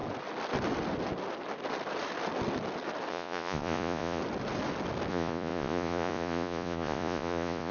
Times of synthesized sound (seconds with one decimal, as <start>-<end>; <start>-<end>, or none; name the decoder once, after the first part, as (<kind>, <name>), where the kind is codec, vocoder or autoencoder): 3.1-4.2 (vocoder, Vocos); 5.1-7.7